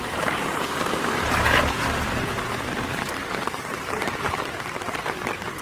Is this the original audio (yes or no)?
no